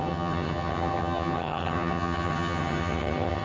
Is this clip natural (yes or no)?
no